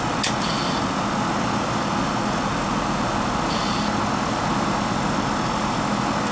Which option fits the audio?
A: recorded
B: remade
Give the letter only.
A